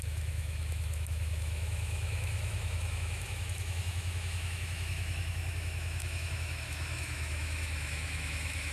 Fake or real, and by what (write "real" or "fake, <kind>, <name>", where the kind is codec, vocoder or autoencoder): fake, autoencoder, DAC-VAE